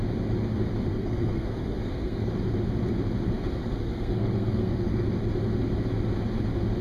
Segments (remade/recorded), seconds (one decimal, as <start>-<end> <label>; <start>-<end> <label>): 0.0-0.9 recorded; 0.9-2.3 remade; 2.3-3.6 recorded; 3.6-5.1 remade; 5.1-6.8 recorded